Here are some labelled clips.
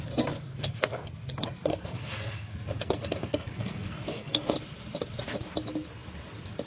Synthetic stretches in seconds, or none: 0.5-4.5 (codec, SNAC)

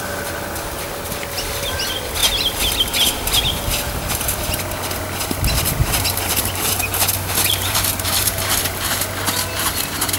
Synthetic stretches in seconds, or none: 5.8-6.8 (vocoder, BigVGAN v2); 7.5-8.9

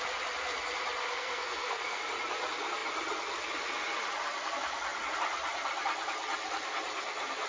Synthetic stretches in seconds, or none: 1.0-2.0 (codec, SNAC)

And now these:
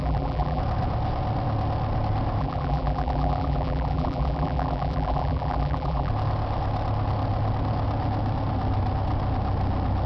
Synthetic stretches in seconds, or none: 0.0-0.6 (vocoder, BigVGAN v2); 2.4-6.1

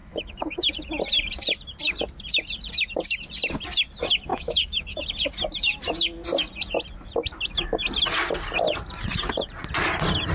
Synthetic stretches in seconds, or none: 0.0-0.7 (autoencoder, DAC-VAE); 4.3-5.0

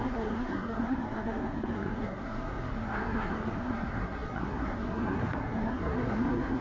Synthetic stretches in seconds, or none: 0.0-6.6 (codec, SNAC)